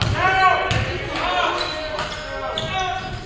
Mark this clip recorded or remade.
recorded